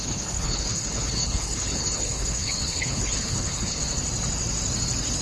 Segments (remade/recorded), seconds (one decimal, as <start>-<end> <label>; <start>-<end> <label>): 0.0-3.8 remade; 3.8-5.2 recorded